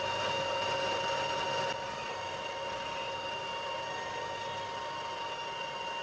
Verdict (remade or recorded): recorded